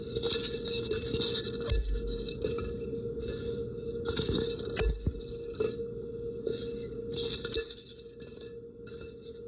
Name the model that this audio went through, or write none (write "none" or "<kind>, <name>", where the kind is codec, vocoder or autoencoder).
none